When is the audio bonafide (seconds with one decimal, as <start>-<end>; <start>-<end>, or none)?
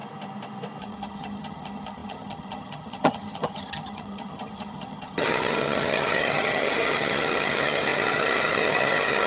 0.0-0.8